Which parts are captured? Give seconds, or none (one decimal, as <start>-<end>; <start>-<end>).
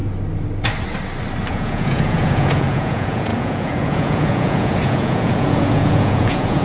0.0-1.5